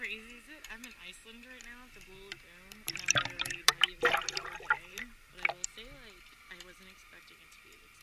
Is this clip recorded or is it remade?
recorded